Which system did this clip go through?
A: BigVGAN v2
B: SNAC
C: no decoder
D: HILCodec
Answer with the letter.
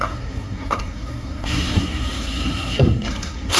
B